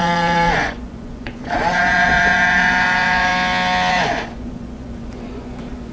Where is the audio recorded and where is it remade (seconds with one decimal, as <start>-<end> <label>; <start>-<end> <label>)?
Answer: 0.0-3.3 remade; 3.3-3.9 recorded; 3.9-5.9 remade